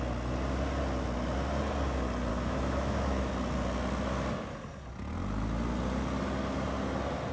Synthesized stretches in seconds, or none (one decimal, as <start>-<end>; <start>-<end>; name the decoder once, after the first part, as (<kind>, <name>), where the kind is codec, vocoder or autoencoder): 2.3-3.3 (autoencoder, DAC-VAE)